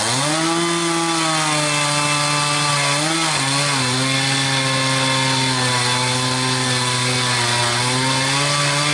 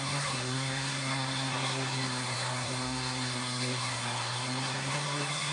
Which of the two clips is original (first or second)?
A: first